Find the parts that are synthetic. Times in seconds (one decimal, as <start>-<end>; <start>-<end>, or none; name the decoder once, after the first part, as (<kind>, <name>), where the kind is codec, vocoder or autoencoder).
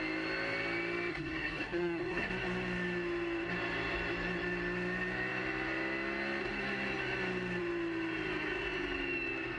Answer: 1.1-2.3 (codec, SNAC)